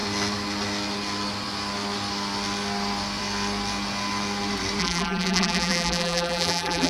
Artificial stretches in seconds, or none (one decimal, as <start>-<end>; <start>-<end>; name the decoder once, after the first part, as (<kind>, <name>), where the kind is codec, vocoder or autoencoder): 4.8-6.9 (vocoder, BigVGAN v2)